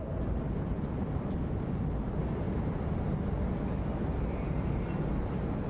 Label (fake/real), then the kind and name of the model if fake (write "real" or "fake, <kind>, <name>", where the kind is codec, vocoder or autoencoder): real